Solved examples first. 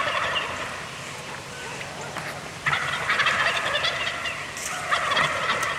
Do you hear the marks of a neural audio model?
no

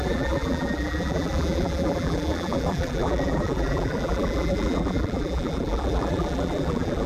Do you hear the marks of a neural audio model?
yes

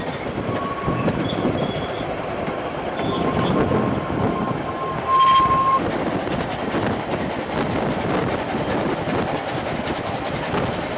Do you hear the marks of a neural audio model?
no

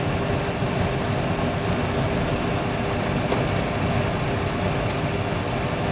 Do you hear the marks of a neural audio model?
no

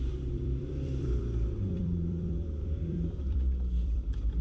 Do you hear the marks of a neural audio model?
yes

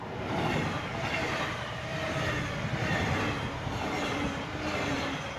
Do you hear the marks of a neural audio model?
no